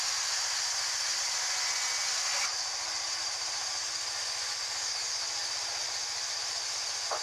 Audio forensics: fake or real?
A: real